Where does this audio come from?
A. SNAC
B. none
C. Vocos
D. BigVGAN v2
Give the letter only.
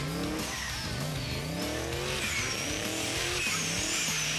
B